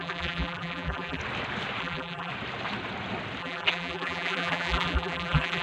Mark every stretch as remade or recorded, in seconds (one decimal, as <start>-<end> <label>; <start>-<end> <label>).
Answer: 0.0-1.2 remade; 1.2-1.8 recorded; 1.8-2.3 remade; 2.3-3.4 recorded; 3.4-5.6 remade